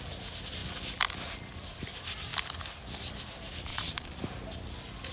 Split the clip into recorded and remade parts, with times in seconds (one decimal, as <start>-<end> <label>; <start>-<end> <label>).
0.0-3.7 recorded; 3.7-4.2 remade; 4.2-5.1 recorded